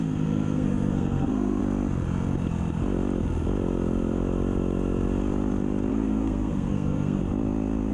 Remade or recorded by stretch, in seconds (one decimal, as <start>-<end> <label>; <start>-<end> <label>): 0.0-1.6 remade; 1.6-5.9 recorded; 5.9-7.2 remade; 7.2-7.9 recorded